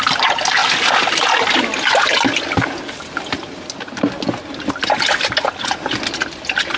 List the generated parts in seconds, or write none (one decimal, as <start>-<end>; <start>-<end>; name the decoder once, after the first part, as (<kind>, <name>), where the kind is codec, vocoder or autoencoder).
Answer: none